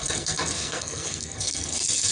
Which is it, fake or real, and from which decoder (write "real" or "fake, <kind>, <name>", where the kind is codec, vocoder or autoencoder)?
fake, codec, SNAC